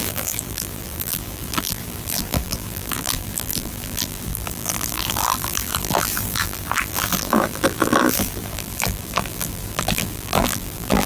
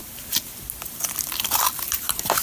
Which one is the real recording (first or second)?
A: second